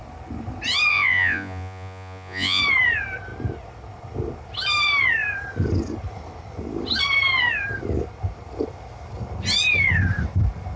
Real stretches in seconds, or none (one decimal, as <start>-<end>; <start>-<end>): 0.0-0.9; 2.6-10.8